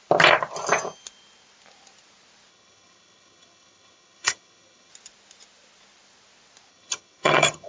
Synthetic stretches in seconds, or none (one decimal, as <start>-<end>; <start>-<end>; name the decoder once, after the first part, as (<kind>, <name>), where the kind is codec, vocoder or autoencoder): 2.5-4.9 (vocoder, HiFi-GAN); 6.7-7.7